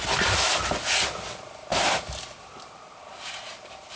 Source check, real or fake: real